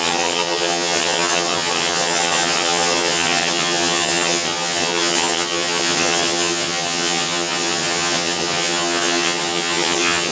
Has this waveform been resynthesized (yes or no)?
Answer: yes